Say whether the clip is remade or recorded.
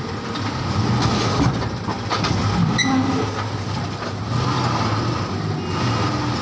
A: recorded